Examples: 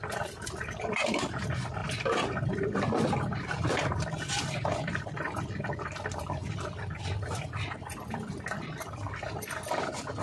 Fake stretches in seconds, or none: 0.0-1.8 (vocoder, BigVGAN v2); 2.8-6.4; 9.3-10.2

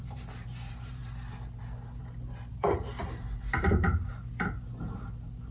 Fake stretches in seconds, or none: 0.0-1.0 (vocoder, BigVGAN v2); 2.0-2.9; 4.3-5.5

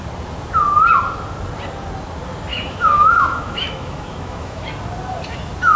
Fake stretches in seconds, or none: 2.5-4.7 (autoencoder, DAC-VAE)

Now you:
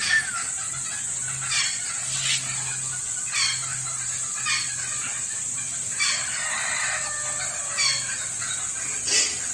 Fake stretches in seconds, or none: none

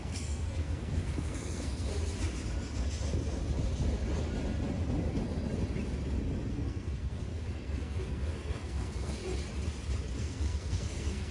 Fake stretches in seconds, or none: 0.0-1.9 (codec, SNAC); 6.5-9.2; 10.2-11.3